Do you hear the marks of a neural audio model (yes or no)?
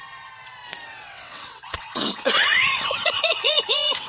yes